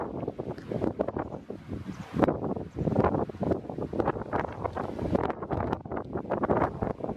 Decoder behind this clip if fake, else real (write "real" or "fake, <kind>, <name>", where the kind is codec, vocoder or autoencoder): real